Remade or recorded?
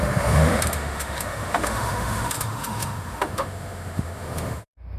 remade